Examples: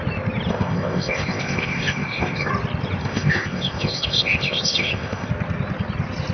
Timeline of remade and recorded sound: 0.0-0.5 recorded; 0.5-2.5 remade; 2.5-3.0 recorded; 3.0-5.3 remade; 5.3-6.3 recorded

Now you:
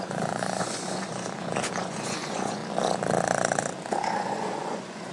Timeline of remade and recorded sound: 0.0-2.6 remade; 2.6-4.0 recorded; 4.0-5.1 remade

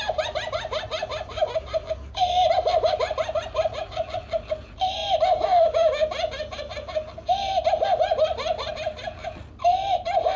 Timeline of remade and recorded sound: 0.0-1.7 remade; 1.7-2.5 recorded; 2.5-5.0 remade; 5.0-8.7 recorded; 8.7-10.4 remade

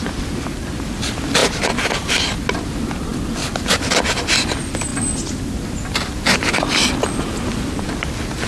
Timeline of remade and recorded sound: 0.0-1.4 recorded; 1.4-2.3 remade; 2.3-3.1 recorded; 3.1-3.9 remade; 3.9-8.5 recorded

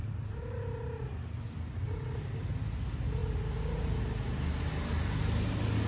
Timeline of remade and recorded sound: 0.0-5.9 recorded

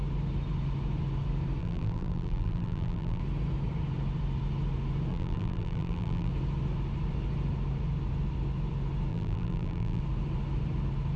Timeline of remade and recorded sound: 0.0-1.6 recorded; 1.6-3.2 remade; 3.2-5.1 recorded; 5.1-6.3 remade; 6.3-9.1 recorded; 9.1-10.0 remade; 10.0-11.2 recorded

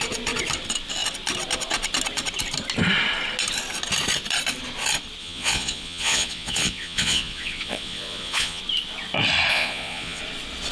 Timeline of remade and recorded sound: 0.0-5.2 recorded; 5.2-8.6 remade; 8.6-9.5 recorded; 9.5-10.2 remade; 10.2-10.7 recorded

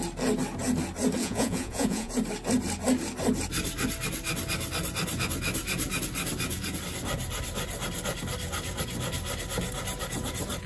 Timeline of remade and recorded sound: 0.0-1.2 recorded; 1.2-2.1 remade; 2.1-10.7 recorded